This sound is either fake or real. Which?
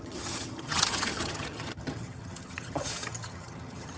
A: fake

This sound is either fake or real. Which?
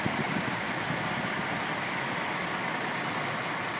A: real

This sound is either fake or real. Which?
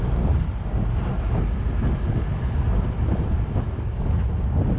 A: real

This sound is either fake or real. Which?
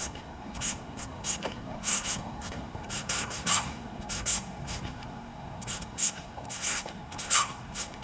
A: fake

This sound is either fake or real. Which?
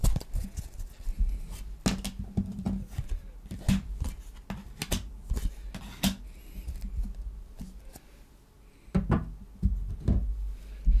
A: real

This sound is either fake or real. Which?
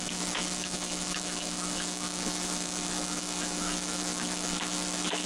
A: fake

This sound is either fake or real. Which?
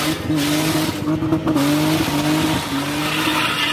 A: real